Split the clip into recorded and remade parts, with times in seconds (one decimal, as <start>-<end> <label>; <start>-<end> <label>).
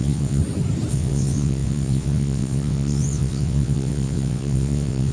0.0-0.4 remade; 0.4-0.9 recorded; 0.9-5.1 remade